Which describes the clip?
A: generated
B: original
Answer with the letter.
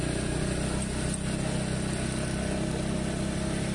B